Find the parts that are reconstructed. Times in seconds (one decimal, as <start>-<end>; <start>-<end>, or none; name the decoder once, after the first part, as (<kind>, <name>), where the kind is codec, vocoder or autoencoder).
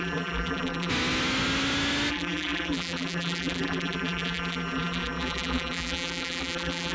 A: 0.0-0.9 (vocoder, BigVGAN v2); 2.1-6.9